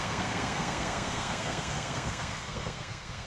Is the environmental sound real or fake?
fake